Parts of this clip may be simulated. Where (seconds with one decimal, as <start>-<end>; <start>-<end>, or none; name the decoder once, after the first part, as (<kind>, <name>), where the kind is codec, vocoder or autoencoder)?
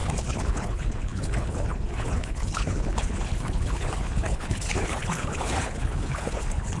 0.0-6.8 (codec, HILCodec)